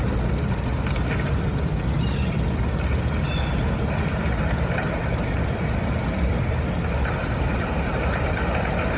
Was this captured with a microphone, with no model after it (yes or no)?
yes